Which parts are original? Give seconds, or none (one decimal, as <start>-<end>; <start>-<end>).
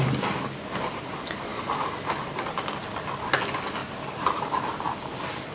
0.0-5.5